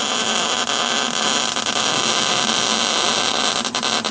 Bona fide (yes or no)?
yes